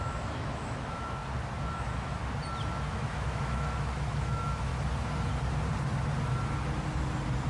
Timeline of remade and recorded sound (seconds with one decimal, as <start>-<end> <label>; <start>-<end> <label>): 0.0-1.2 remade; 1.2-1.7 recorded; 1.7-2.2 remade; 2.2-2.9 recorded; 2.9-4.7 remade; 4.7-7.5 recorded